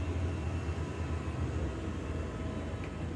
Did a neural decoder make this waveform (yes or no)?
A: no